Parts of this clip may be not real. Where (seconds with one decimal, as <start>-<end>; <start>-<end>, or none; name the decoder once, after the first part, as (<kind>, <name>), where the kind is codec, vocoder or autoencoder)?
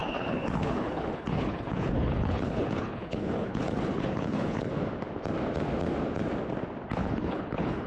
0.0-4.7 (codec, HILCodec); 7.0-7.9